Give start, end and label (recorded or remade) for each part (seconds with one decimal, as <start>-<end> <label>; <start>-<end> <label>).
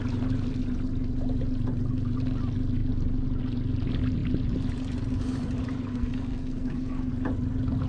0.0-5.9 recorded; 5.9-7.1 remade; 7.1-7.9 recorded